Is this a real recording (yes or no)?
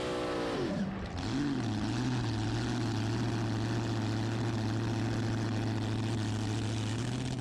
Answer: yes